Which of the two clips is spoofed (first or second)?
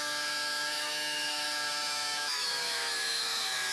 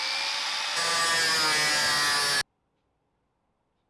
first